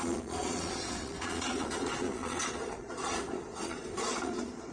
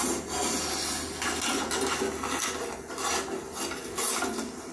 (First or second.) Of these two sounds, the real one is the second